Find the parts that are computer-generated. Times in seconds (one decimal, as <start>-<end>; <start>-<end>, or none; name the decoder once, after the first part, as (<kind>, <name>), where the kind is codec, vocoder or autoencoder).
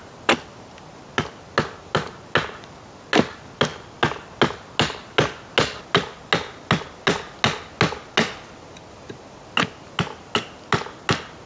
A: none